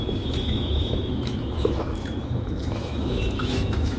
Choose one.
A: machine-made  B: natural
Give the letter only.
A